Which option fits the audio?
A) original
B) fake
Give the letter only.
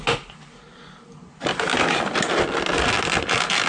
A